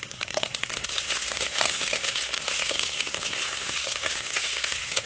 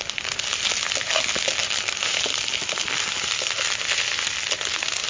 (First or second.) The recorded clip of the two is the second